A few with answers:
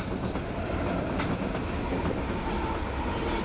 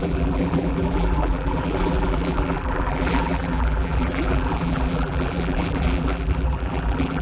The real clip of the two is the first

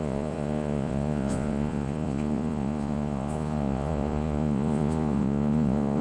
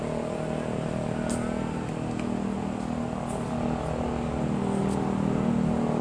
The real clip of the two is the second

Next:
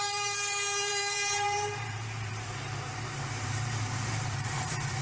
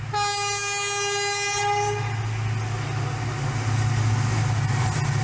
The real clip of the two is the second